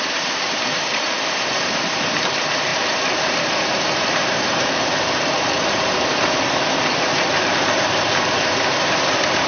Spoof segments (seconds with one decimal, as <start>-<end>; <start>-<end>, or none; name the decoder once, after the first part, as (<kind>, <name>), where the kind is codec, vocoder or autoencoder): 0.0-9.5 (vocoder, BigVGAN v2)